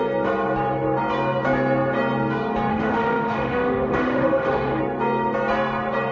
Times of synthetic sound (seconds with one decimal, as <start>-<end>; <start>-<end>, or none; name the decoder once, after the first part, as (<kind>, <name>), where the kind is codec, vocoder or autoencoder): 2.7-4.8 (autoencoder, DAC-VAE)